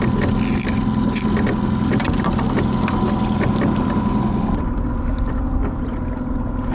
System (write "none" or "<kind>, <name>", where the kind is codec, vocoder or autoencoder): none